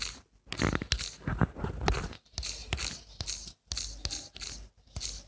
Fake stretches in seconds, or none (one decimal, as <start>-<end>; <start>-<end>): none